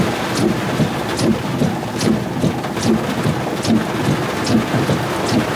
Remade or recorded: recorded